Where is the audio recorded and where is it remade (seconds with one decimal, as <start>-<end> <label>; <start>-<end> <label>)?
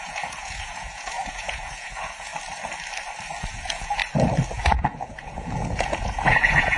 0.0-2.3 remade; 2.3-3.5 recorded; 3.5-4.0 remade; 4.0-4.5 recorded; 4.5-6.8 remade